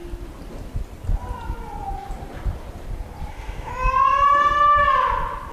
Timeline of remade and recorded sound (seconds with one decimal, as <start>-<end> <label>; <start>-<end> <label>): 0.0-3.3 recorded; 3.3-3.7 remade; 3.7-5.5 recorded